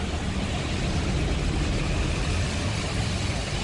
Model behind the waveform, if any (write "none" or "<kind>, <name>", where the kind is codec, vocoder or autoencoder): none